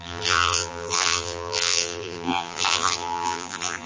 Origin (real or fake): fake